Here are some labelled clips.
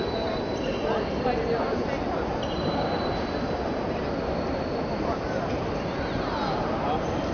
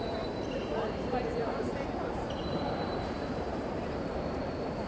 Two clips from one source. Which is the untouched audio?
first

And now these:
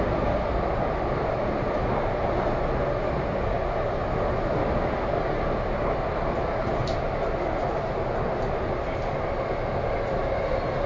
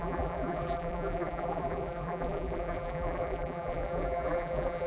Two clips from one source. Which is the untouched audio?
first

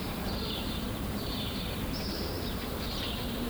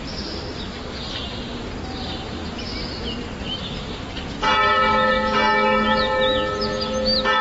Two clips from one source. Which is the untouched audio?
second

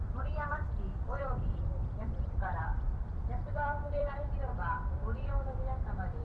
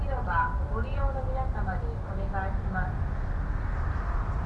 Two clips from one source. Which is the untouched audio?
second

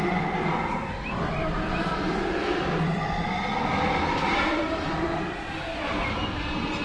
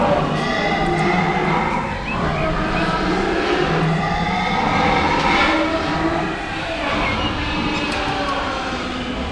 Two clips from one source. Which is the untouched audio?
second